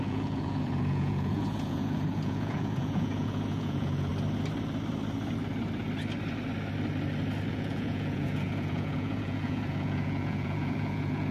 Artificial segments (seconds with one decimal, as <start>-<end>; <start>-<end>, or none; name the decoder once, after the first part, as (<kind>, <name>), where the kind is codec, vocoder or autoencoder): 0.0-4.1 (vocoder, Vocos); 7.5-11.3